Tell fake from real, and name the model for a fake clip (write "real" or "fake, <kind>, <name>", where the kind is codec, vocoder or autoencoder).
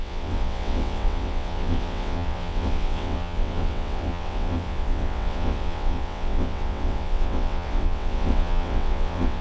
fake, vocoder, WaveNeXt